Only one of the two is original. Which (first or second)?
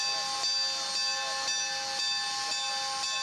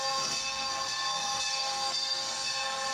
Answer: first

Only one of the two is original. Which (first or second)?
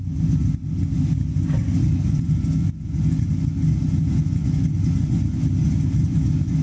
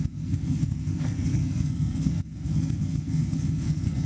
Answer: first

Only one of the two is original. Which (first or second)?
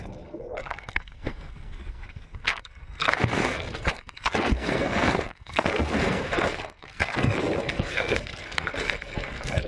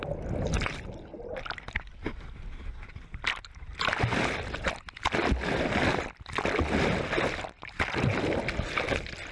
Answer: second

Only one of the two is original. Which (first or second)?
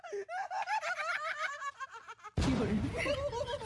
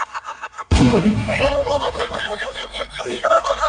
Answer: first